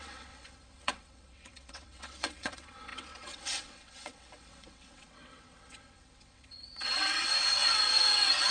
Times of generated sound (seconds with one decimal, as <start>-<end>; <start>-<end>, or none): 0.0-8.5